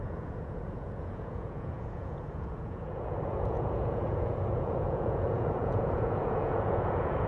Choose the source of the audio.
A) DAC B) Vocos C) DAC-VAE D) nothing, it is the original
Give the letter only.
B